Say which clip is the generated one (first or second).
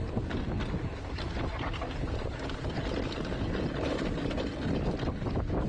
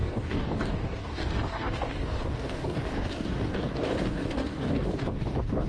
second